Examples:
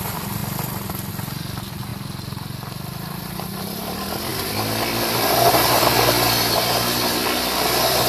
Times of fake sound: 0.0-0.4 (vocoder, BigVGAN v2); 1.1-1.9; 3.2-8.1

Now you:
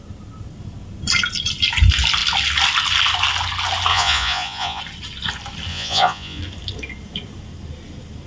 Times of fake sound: 3.9-4.8 (vocoder, Vocos); 5.7-6.4